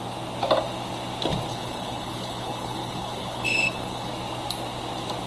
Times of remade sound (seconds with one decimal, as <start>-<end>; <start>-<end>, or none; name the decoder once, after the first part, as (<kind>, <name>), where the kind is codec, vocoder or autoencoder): 1.5-4.1 (codec, HILCodec)